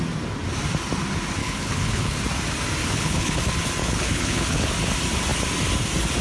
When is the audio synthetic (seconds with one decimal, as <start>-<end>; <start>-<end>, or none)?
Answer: 1.4-2.2; 2.8-3.4; 3.8-4.7